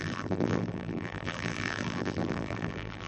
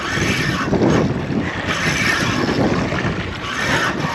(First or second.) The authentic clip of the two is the second